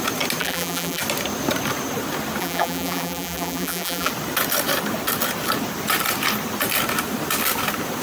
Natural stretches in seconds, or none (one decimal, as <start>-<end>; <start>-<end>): 0.0-0.4; 1.0-2.4; 4.1-8.0